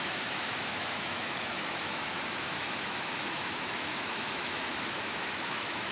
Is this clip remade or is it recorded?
remade